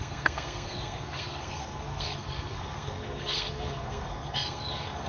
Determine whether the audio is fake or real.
fake